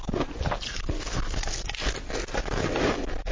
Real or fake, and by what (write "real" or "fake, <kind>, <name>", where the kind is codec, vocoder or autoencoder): real